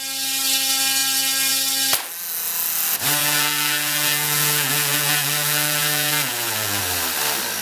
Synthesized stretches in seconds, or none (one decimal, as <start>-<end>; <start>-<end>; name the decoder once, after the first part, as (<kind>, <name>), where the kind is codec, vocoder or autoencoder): 3.2-6.8 (vocoder, Vocos)